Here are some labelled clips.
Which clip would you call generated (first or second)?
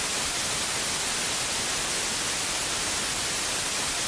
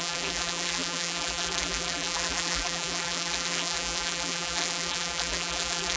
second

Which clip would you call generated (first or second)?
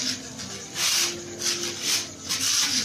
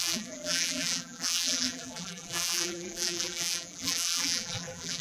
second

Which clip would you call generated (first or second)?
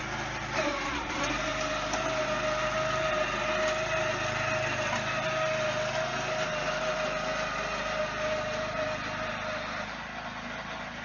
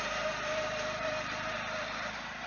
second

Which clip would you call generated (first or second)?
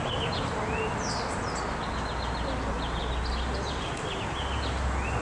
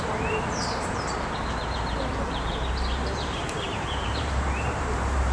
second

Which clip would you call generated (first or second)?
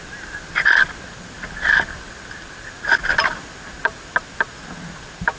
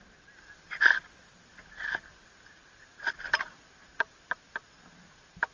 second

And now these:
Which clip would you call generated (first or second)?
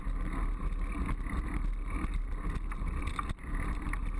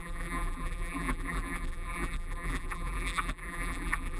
second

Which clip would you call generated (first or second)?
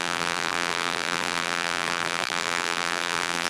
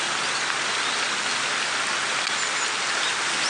first